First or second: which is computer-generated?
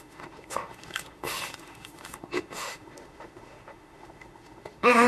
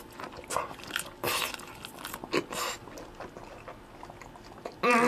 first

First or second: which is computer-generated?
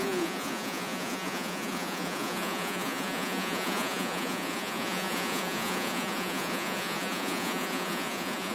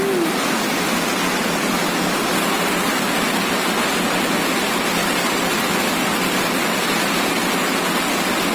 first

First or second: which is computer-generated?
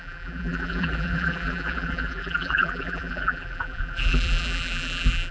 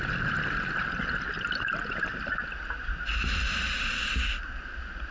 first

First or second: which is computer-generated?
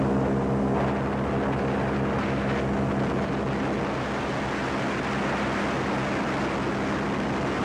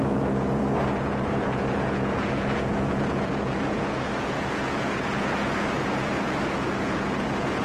second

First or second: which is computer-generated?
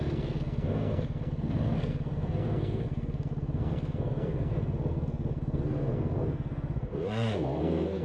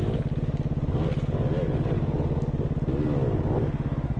first